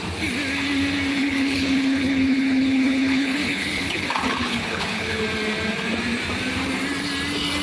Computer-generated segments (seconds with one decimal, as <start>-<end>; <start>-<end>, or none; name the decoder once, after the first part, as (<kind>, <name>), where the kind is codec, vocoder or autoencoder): 1.1-5.2 (codec, HILCodec)